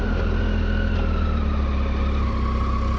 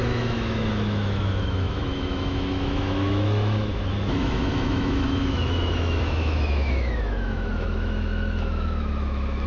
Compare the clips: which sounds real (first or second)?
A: first